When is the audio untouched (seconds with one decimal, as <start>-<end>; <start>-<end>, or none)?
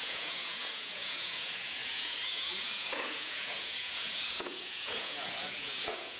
none